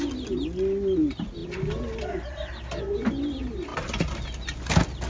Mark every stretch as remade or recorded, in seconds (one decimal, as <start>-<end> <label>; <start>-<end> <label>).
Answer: 0.0-5.1 recorded